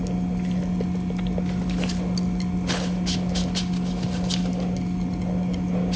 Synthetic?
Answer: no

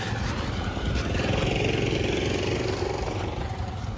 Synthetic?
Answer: no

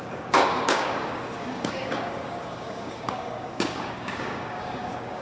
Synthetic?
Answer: yes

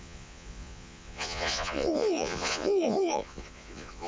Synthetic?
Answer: yes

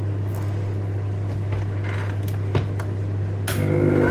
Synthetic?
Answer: no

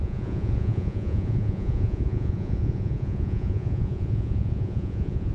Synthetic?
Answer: yes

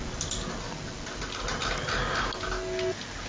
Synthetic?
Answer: no